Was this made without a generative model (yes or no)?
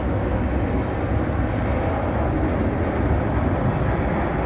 yes